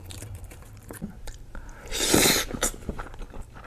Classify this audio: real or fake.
fake